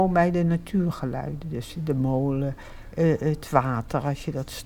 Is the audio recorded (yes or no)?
yes